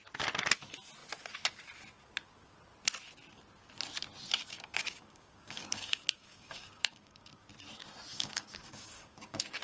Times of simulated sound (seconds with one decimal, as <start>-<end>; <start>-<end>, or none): 4.4-7.3; 8.1-9.6